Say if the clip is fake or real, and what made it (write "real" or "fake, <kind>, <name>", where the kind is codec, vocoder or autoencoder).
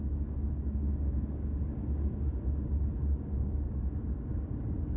fake, codec, DAC